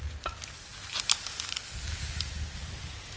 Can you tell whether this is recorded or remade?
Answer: recorded